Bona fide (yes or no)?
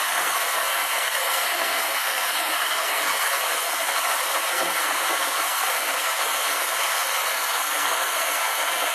no